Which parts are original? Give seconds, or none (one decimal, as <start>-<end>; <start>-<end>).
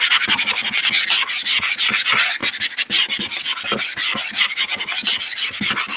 0.0-6.0